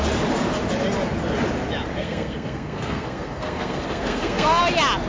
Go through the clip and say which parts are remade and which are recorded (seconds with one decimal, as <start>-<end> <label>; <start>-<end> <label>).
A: 0.0-2.0 recorded; 2.0-4.6 remade; 4.6-5.1 recorded